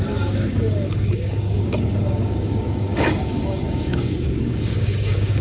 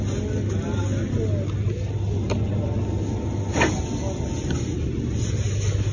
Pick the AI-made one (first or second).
first